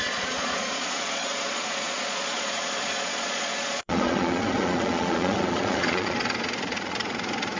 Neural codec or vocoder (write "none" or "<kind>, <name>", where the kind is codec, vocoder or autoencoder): vocoder, Vocos